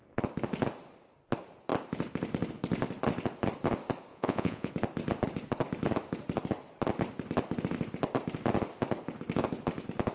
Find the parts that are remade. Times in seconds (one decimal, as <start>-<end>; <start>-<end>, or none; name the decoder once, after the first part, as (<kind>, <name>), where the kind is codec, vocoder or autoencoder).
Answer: 4.1-4.7 (vocoder, Vocos)